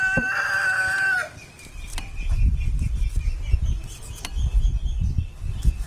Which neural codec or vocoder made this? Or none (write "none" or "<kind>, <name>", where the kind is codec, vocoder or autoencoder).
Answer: none